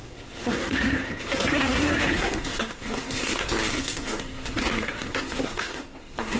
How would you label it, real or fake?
fake